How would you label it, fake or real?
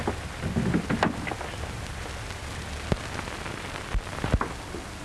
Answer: real